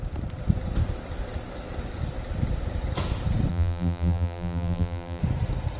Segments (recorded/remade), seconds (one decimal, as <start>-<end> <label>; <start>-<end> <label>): 0.0-3.5 recorded; 3.5-5.2 remade; 5.2-5.8 recorded

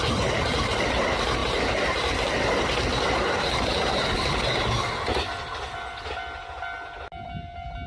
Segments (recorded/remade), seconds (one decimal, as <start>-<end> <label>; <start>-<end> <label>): 0.0-7.9 recorded